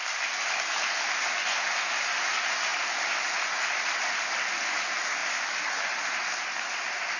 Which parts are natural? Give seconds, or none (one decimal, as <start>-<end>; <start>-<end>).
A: 0.0-7.2